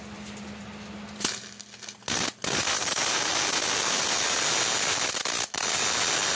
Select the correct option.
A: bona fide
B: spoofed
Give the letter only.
A